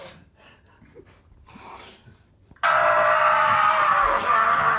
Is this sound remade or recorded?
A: recorded